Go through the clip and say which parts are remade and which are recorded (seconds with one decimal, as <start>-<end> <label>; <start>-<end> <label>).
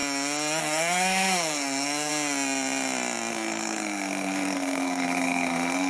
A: 0.0-0.6 recorded; 0.6-2.1 remade; 2.1-3.3 recorded; 3.3-5.9 remade